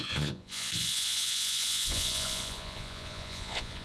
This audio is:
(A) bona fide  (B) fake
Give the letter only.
B